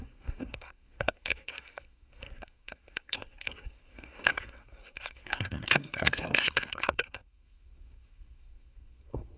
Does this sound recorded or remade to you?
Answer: remade